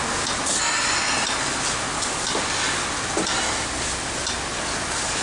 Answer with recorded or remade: recorded